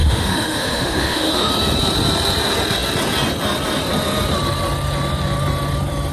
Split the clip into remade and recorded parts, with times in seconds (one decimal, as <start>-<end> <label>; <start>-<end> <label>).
0.0-1.5 remade; 1.5-6.1 recorded